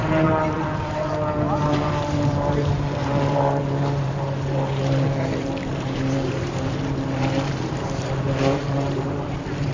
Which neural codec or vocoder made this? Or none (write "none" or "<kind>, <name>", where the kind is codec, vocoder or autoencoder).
vocoder, BigVGAN v2